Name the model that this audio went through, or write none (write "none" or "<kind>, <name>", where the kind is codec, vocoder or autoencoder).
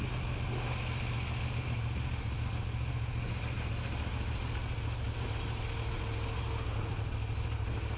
none